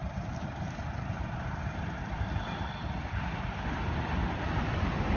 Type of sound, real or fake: fake